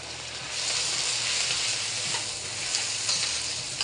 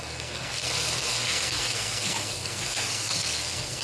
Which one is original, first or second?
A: first